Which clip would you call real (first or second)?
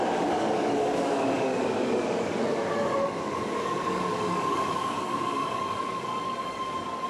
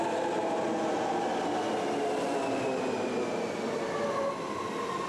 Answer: second